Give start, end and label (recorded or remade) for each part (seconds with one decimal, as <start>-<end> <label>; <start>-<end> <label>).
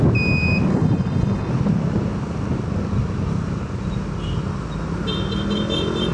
0.0-0.7 recorded; 0.7-1.5 remade; 1.5-6.1 recorded